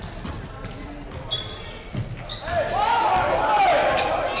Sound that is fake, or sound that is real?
real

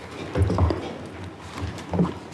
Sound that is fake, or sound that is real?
real